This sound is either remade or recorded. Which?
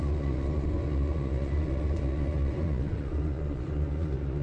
remade